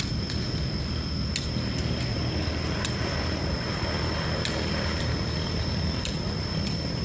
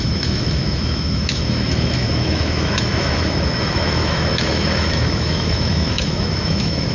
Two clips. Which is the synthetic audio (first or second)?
second